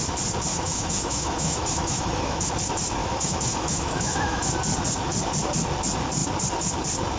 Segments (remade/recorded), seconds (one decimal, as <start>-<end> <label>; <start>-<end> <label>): 0.0-0.5 recorded; 0.5-2.5 remade; 2.5-3.0 recorded; 3.0-4.5 remade; 4.5-7.2 recorded